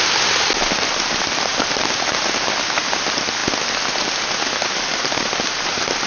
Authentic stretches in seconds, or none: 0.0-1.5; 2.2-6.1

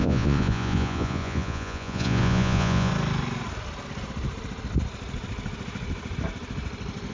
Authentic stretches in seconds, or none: 2.9-7.1